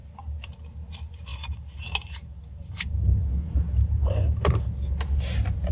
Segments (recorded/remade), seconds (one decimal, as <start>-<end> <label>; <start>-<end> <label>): 0.0-0.5 remade; 0.5-1.3 recorded; 1.3-4.7 remade; 4.7-5.7 recorded